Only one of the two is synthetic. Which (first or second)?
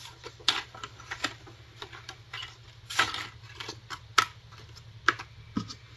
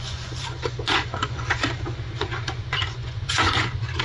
second